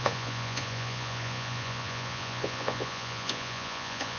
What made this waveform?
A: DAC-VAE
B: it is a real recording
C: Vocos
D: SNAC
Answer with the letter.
C